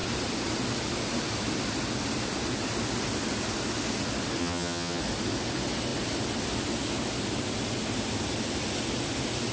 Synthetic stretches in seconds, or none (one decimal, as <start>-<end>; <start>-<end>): 4.4-5.0